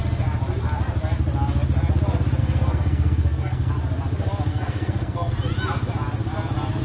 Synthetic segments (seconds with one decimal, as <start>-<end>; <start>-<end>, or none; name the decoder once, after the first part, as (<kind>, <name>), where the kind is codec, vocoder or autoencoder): 2.4-3.7 (codec, SNAC); 4.5-5.3